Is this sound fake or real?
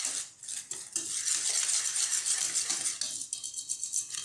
real